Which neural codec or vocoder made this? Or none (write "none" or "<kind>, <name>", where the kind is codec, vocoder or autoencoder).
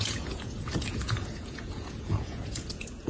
vocoder, Vocos